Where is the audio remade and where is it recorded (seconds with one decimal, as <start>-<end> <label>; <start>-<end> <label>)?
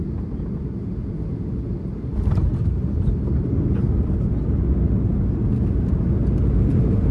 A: 0.0-7.1 recorded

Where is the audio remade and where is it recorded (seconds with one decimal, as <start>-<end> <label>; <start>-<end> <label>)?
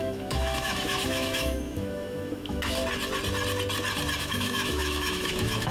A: 0.0-2.8 remade; 2.8-4.2 recorded; 4.2-5.7 remade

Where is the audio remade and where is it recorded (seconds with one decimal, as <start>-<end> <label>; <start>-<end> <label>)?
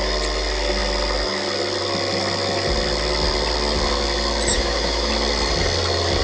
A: 0.0-4.5 recorded; 4.5-5.1 remade; 5.1-6.2 recorded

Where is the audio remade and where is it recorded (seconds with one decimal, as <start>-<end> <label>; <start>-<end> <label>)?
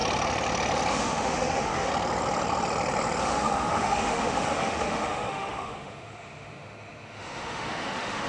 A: 0.0-0.9 recorded; 0.9-1.9 remade; 1.9-3.2 recorded; 3.2-8.3 remade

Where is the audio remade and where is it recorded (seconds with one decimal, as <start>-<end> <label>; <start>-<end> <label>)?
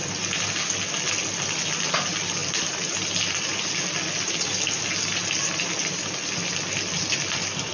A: 0.0-7.7 recorded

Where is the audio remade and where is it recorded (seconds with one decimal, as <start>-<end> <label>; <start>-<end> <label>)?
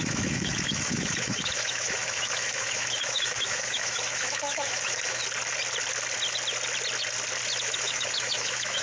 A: 0.0-5.2 remade; 5.2-7.6 recorded; 7.6-8.8 remade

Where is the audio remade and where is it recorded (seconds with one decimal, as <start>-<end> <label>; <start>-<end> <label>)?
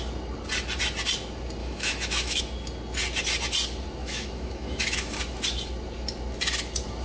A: 0.0-1.6 recorded; 1.6-2.4 remade; 2.4-4.0 recorded; 4.0-5.2 remade; 5.2-7.0 recorded